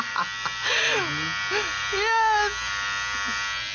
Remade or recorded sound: recorded